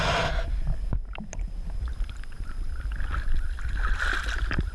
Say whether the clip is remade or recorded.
recorded